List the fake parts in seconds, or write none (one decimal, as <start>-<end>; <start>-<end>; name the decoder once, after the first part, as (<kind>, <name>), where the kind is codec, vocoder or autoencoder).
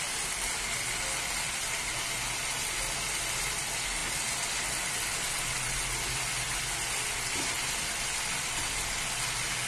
none